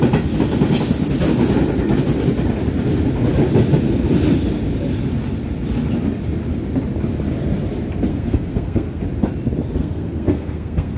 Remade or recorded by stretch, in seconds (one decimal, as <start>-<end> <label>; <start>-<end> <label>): 0.0-8.1 recorded; 8.1-9.0 remade; 9.0-9.8 recorded; 9.8-11.0 remade